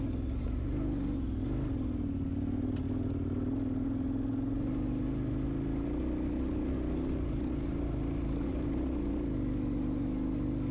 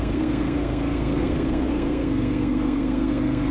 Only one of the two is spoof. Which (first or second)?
second